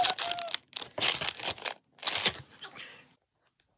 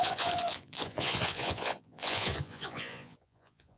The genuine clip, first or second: first